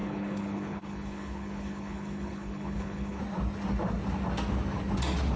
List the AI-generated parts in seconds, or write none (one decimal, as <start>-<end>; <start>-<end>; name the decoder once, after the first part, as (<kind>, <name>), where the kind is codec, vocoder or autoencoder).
0.0-3.2 (codec, HILCodec)